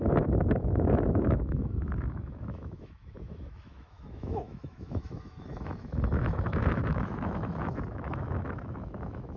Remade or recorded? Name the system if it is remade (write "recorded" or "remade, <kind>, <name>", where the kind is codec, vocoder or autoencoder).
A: remade, autoencoder, DAC-VAE